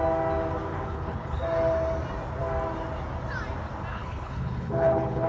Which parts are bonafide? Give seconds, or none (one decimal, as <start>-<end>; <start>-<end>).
0.0-0.7; 1.4-3.9